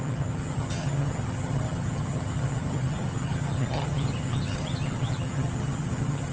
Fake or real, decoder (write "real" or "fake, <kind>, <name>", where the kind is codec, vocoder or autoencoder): fake, vocoder, HiFi-GAN